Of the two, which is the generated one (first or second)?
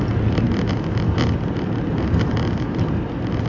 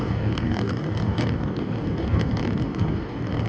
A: second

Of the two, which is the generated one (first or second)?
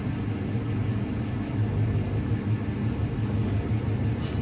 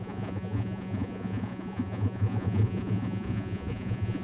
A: second